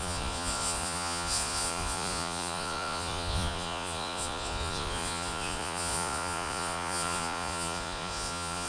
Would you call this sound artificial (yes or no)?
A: yes